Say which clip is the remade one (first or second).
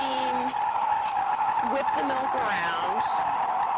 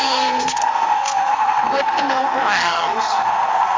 second